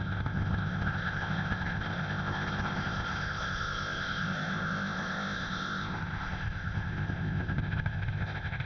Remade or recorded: remade